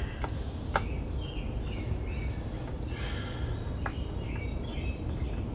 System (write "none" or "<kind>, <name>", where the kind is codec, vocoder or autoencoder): none